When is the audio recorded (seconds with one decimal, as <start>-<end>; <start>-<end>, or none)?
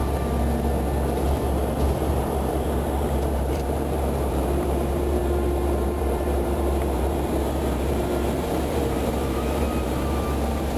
0.0-2.1